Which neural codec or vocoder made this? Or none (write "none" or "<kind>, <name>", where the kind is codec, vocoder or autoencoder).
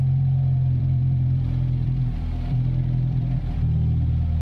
vocoder, BigVGAN v2